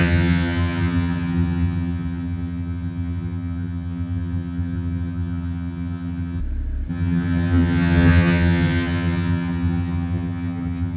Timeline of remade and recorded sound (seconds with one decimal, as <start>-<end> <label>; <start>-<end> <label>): 0.0-6.4 remade; 6.4-6.9 recorded; 6.9-11.0 remade